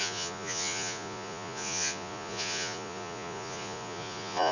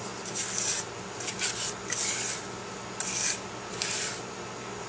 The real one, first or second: second